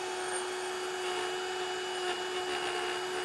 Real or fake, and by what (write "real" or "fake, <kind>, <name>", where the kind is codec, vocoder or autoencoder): real